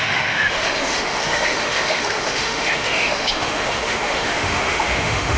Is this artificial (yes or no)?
yes